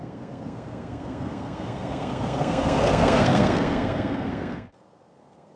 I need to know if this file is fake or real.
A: fake